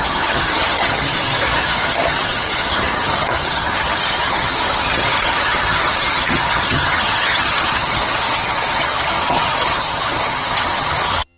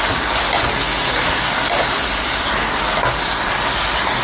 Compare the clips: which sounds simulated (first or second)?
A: first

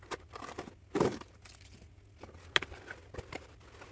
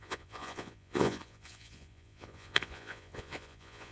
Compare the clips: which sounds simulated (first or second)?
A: second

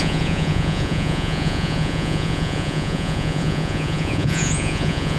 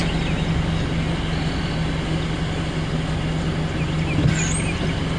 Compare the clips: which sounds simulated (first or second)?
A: first